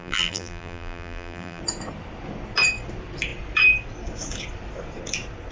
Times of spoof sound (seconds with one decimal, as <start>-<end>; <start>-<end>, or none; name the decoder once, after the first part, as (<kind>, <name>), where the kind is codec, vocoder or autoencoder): 0.0-1.6 (vocoder, BigVGAN v2)